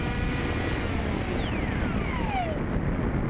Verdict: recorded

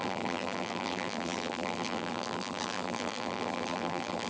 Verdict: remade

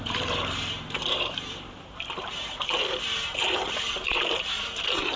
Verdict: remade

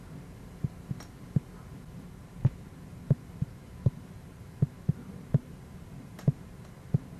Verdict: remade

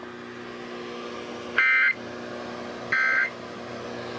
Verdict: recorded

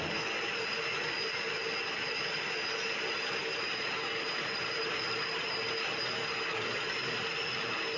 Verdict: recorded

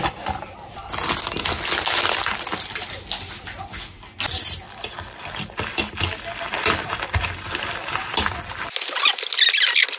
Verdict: recorded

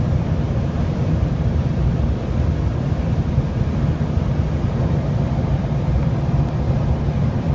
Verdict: remade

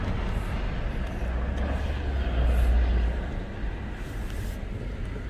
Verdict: recorded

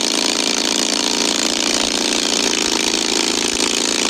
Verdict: remade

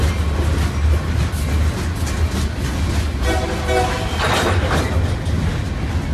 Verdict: recorded